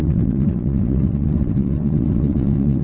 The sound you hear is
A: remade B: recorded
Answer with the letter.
A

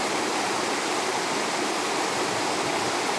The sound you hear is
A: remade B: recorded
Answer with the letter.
B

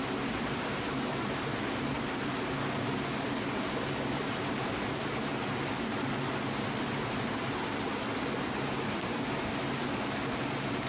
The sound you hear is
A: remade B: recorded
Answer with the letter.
B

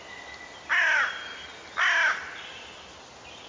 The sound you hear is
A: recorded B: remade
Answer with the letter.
A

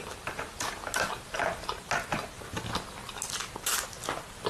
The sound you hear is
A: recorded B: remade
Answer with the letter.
A